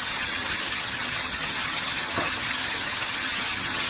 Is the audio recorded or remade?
remade